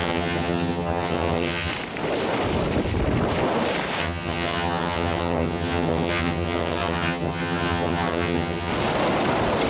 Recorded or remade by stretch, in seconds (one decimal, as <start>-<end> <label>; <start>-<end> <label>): 0.0-1.7 remade; 1.7-4.0 recorded; 4.0-8.7 remade; 8.7-9.7 recorded